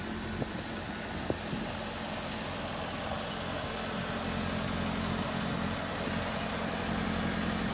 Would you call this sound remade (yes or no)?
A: no